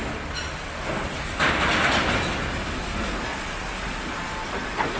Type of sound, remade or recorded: recorded